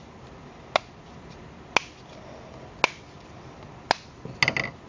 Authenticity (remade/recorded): recorded